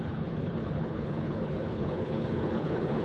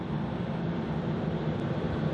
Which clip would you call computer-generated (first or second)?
first